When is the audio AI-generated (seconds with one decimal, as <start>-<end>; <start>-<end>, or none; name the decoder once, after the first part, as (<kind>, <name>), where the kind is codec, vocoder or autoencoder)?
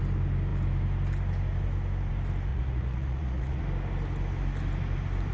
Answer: 2.5-3.6 (vocoder, Vocos)